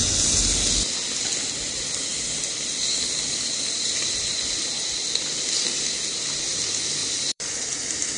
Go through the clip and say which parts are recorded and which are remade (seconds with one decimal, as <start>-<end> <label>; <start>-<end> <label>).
0.0-2.1 recorded; 2.1-5.5 remade; 5.5-7.0 recorded; 7.0-8.2 remade